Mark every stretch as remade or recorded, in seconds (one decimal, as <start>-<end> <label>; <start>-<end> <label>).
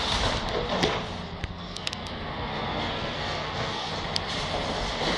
0.0-1.4 recorded; 1.4-3.9 remade; 3.9-5.2 recorded